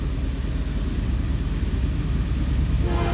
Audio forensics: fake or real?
real